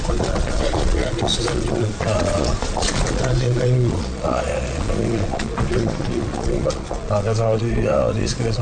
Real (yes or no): no